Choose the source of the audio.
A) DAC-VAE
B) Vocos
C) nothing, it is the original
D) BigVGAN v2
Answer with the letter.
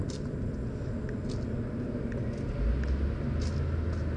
C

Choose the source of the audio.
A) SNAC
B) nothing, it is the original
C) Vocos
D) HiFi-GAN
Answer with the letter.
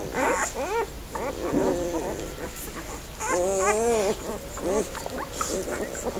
B